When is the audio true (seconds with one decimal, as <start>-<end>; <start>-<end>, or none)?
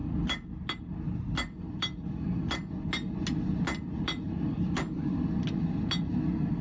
0.0-6.6